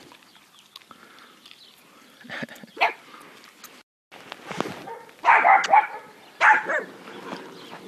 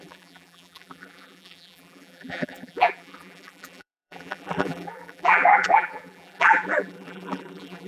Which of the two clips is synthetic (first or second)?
second